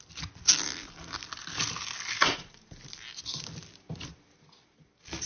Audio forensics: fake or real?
real